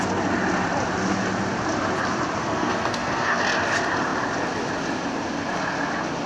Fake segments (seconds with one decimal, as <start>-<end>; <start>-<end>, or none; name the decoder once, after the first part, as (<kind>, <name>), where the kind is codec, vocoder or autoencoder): 2.4-3.4 (codec, SNAC)